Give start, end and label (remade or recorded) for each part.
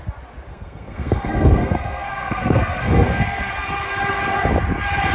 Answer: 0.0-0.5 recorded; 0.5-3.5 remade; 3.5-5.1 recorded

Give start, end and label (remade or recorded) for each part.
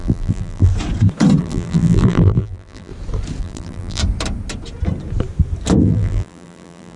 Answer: 0.0-0.7 remade; 0.7-1.4 recorded; 1.4-2.9 remade; 2.9-3.4 recorded; 3.4-4.0 remade; 4.0-5.8 recorded; 5.8-7.0 remade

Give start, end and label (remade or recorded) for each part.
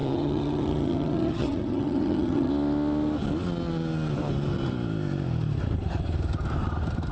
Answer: 0.0-2.5 remade; 2.5-7.1 recorded